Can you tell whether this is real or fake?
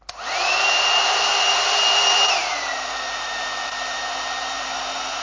fake